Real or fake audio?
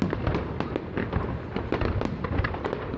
real